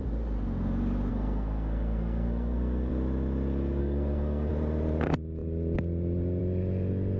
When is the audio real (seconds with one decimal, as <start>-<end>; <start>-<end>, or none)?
0.0-1.1; 2.9-3.8; 4.5-7.2